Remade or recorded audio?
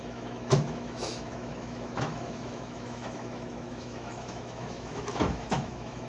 remade